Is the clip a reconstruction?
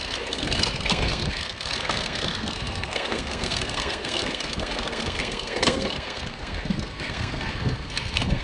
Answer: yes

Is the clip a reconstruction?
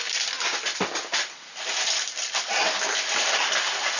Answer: no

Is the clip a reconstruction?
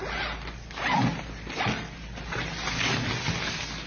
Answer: no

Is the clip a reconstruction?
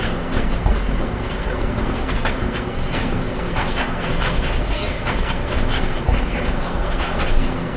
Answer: yes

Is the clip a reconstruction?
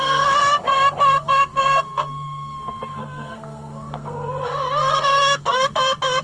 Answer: yes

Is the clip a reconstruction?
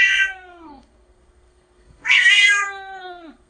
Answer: yes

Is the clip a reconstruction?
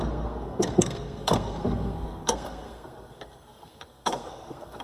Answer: yes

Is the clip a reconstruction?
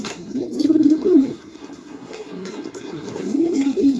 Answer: yes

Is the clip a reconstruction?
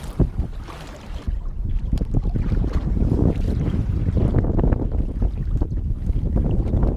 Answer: no